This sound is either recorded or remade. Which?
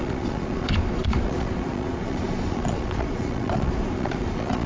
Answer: remade